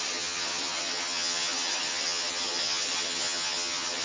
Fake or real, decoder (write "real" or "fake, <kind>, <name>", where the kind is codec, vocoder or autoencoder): fake, vocoder, HiFi-GAN